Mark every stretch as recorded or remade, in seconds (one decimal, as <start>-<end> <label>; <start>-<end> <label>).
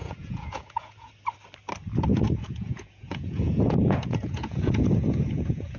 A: 0.0-1.1 remade; 1.1-2.1 recorded; 2.1-5.8 remade